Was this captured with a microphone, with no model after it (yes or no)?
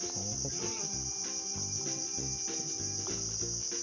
yes